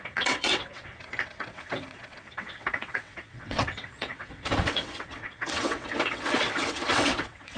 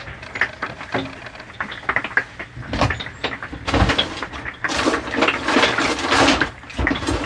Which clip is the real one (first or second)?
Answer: second